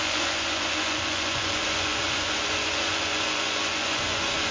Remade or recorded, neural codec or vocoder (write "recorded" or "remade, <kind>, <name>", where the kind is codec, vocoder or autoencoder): remade, vocoder, Vocos